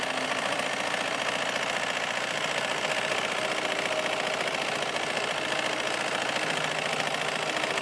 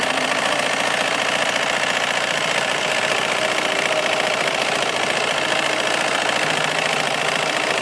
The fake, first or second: second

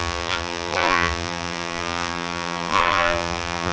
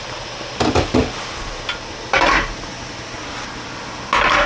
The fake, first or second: first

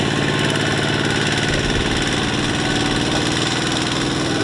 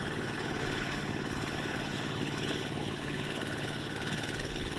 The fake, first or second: second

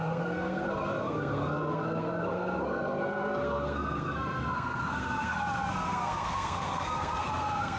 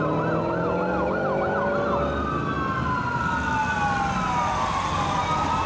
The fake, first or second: first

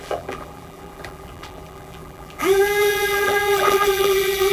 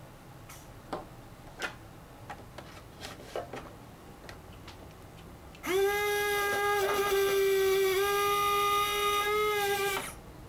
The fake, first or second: first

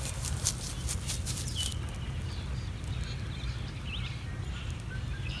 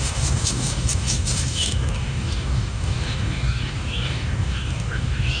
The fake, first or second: second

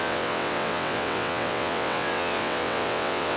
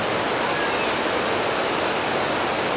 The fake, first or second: first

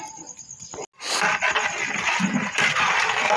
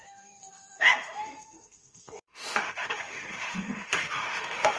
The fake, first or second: second